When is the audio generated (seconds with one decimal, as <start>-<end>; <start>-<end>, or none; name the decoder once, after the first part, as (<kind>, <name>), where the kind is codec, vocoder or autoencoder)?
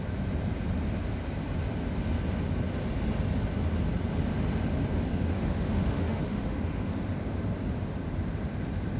5.1-6.9 (autoencoder, DAC-VAE)